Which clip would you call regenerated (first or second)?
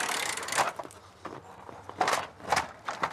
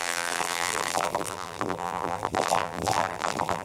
second